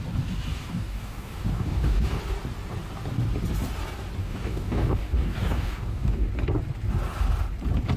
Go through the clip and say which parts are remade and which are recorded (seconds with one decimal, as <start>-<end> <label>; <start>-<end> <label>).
0.0-0.5 recorded; 0.5-2.2 remade; 2.2-4.2 recorded; 4.2-6.3 remade; 6.3-8.0 recorded